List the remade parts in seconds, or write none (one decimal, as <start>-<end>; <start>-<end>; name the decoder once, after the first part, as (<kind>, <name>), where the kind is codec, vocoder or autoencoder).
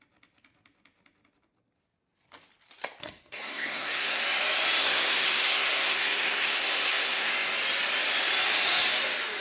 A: 3.0-4.2 (codec, SNAC); 4.8-7.3